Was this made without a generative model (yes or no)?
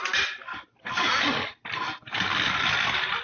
yes